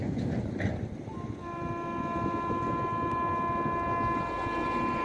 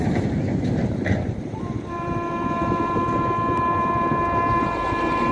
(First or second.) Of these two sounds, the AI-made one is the second